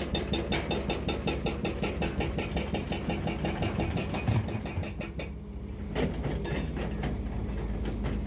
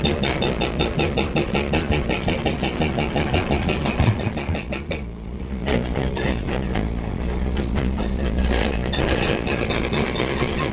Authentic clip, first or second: first